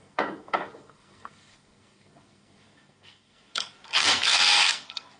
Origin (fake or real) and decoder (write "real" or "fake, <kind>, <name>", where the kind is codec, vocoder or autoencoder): fake, codec, SNAC